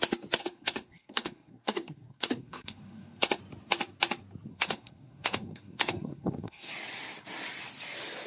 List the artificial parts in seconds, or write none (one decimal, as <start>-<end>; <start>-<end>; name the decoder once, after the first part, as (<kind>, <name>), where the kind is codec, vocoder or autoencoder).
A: 0.4-3.4 (codec, SNAC); 4.5-6.7